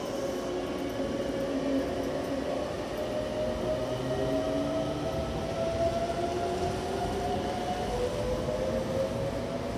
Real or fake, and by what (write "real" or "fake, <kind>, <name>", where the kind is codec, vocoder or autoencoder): real